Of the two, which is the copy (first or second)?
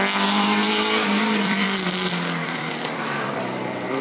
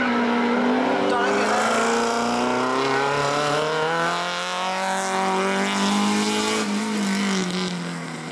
first